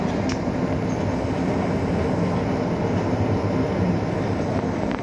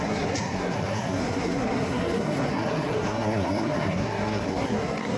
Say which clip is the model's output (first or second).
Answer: second